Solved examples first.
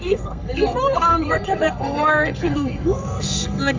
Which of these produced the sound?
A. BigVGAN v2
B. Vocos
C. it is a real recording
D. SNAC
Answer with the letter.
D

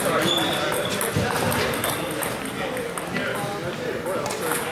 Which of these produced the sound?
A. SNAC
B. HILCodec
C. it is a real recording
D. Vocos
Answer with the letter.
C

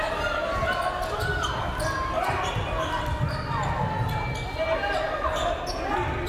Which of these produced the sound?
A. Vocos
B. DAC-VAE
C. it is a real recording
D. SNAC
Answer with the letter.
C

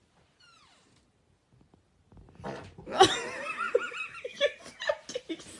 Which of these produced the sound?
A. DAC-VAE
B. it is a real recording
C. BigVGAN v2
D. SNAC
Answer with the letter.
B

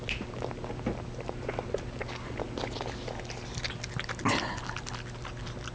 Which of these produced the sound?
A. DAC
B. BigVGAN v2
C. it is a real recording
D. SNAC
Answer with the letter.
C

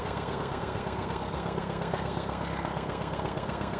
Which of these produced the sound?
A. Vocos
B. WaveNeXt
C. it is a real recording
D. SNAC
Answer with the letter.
D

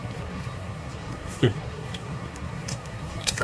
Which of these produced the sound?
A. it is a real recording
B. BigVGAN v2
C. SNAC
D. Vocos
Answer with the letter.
C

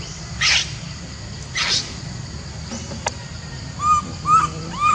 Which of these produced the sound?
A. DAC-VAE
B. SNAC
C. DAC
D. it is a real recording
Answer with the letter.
D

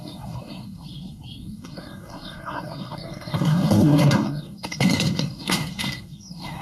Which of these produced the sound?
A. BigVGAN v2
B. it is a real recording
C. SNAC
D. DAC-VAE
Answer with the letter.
C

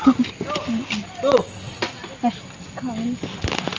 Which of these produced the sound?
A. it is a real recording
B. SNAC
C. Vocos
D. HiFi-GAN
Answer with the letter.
A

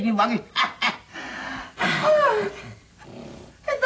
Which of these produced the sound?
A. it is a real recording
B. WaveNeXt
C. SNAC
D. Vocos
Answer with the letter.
A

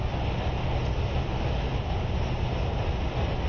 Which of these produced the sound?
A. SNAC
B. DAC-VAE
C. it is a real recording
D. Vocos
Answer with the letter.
C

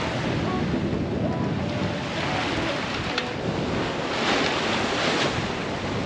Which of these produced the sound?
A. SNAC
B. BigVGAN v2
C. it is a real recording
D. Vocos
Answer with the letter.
C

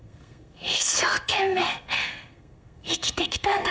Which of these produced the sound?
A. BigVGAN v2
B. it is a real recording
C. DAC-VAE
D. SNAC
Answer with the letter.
D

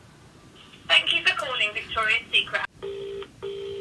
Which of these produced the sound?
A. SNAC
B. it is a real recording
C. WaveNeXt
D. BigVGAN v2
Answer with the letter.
B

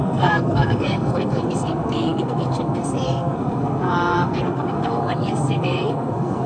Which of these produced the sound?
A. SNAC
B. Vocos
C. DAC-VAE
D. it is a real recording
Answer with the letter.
A